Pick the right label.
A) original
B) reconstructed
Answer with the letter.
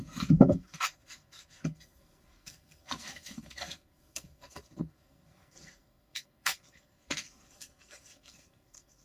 B